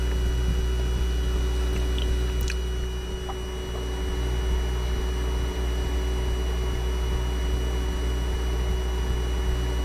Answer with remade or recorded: recorded